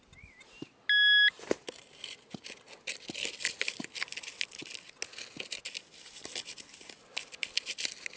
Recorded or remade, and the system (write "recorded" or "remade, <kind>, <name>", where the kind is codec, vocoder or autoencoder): recorded